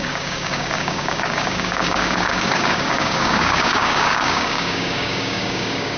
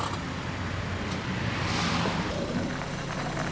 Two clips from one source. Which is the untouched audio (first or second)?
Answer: second